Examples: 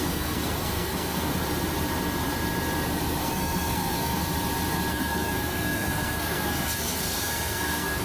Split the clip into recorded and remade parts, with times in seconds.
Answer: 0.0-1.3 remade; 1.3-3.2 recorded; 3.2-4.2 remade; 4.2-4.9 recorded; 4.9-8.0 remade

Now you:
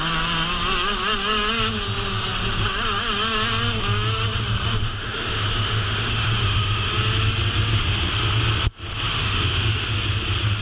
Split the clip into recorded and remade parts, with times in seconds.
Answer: 0.0-4.8 recorded; 4.8-6.9 remade; 6.9-9.1 recorded; 9.1-9.9 remade; 9.9-10.6 recorded

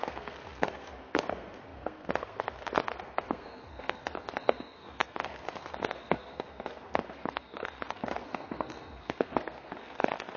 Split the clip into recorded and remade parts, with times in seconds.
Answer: 0.0-10.4 remade

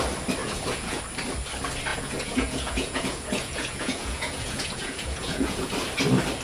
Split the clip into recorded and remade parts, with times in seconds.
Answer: 0.0-0.4 recorded; 0.4-1.0 remade; 1.0-1.9 recorded; 1.9-5.7 remade; 5.7-6.4 recorded

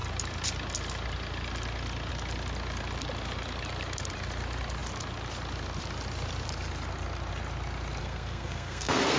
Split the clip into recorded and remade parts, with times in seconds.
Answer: 0.0-8.0 recorded; 8.0-9.2 remade

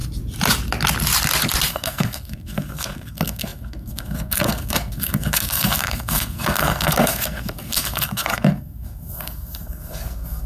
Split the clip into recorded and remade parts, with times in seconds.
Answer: 0.0-1.7 recorded; 1.7-10.5 remade

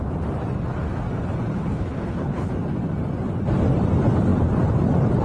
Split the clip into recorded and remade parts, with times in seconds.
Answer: 0.0-1.5 recorded; 1.5-2.5 remade; 2.5-5.2 recorded